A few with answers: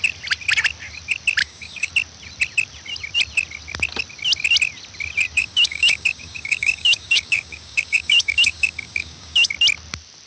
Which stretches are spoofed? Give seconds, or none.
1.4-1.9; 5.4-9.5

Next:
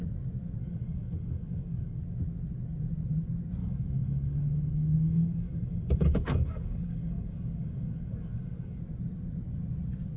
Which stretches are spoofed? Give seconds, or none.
0.6-2.0; 3.6-8.8

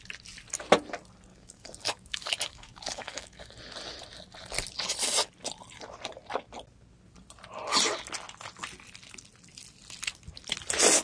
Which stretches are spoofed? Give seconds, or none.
1.3-3.5